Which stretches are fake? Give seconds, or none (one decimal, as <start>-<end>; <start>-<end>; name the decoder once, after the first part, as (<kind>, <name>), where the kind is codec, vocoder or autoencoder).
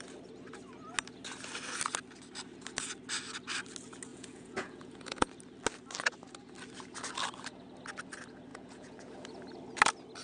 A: 4.1-5.3 (vocoder, Vocos); 8.5-9.1